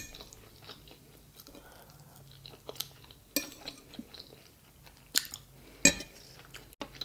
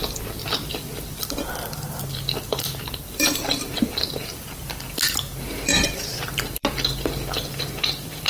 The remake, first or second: second